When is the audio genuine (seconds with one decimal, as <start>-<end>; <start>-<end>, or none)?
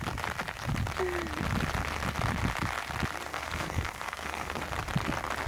0.0-3.3; 4.6-5.5